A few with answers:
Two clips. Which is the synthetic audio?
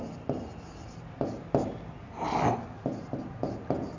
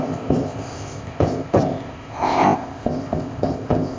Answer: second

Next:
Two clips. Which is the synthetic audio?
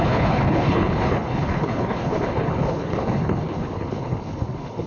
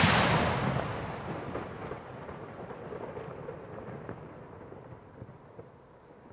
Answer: first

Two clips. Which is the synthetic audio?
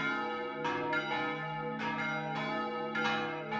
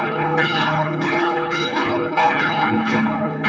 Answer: second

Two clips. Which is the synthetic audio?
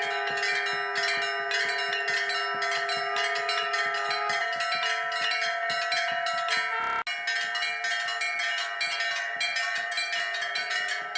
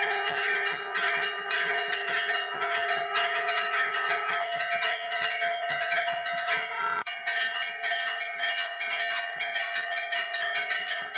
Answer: second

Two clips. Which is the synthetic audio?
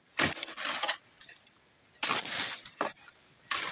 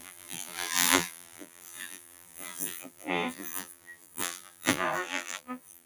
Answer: second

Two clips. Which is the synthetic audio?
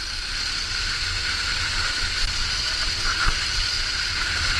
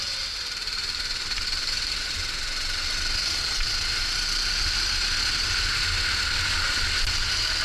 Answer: first